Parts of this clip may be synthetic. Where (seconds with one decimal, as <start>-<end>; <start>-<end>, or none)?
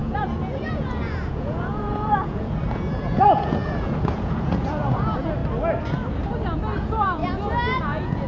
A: 0.0-5.4; 6.8-7.2; 7.8-8.3